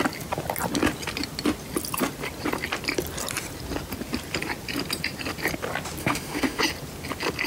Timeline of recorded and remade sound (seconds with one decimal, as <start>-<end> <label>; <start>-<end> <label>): 0.0-6.0 recorded; 6.0-6.6 remade; 6.6-7.5 recorded